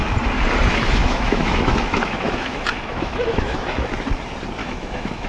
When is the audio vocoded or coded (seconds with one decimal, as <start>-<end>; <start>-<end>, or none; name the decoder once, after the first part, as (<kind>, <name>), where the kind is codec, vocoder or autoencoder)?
0.7-3.9 (autoencoder, DAC-VAE); 4.6-5.3